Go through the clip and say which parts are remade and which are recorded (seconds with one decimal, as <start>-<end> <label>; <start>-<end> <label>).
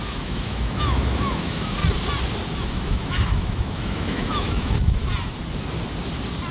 0.0-1.8 remade; 1.8-2.6 recorded; 2.6-5.0 remade; 5.0-6.5 recorded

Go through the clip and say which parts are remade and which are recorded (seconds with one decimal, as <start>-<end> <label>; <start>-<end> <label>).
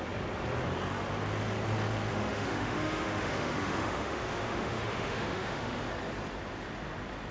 0.0-2.1 recorded; 2.1-5.8 remade; 5.8-7.3 recorded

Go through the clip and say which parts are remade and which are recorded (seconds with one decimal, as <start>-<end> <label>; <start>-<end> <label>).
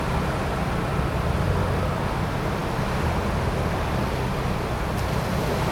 0.0-5.7 recorded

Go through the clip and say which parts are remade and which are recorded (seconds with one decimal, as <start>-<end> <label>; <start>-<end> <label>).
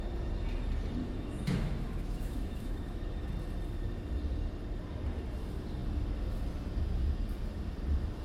0.0-1.0 recorded; 1.0-3.3 remade; 3.3-8.2 recorded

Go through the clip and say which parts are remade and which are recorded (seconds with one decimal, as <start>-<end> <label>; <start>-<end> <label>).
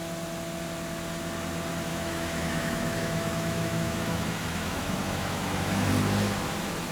0.0-1.9 recorded; 1.9-5.9 remade; 5.9-6.9 recorded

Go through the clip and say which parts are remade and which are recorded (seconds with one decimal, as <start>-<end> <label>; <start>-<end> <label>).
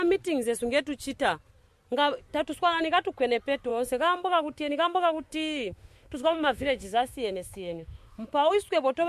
0.0-3.7 recorded; 3.7-8.5 remade; 8.5-9.1 recorded